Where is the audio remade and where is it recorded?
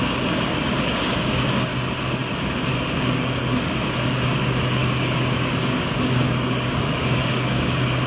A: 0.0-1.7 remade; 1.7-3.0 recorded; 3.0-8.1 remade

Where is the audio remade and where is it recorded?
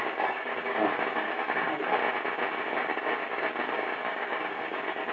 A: 0.0-2.0 remade; 2.0-2.7 recorded; 2.7-5.1 remade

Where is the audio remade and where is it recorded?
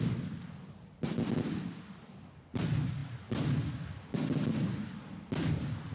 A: 0.0-5.9 recorded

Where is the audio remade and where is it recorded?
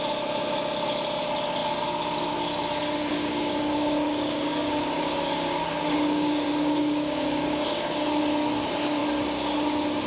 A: 0.0-3.1 recorded; 3.1-8.2 remade; 8.2-10.1 recorded